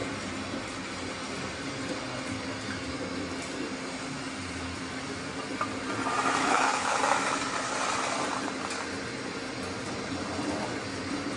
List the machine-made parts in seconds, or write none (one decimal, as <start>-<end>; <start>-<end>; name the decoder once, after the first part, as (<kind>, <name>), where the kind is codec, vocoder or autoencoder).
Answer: 6.4-7.0 (codec, HILCodec)